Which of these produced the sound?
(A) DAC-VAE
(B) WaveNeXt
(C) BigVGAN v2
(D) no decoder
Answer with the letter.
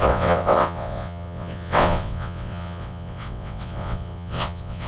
B